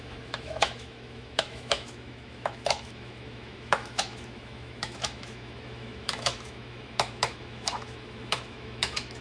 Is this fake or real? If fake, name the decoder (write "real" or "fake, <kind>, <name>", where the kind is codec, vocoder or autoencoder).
fake, autoencoder, DAC-VAE